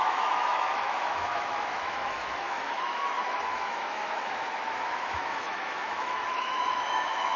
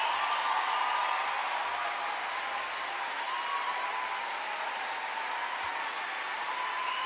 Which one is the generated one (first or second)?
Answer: first